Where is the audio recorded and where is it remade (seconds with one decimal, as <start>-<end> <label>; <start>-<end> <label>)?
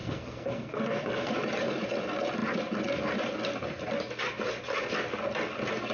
0.0-1.3 remade; 1.3-5.9 recorded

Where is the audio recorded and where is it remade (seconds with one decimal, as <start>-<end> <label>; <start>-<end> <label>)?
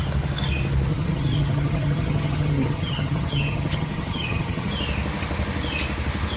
0.0-0.9 recorded; 0.9-4.7 remade; 4.7-6.4 recorded